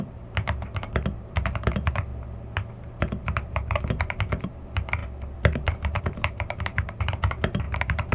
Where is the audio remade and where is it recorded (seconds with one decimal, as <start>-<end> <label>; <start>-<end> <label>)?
0.0-2.1 remade; 2.1-2.7 recorded; 2.7-8.1 remade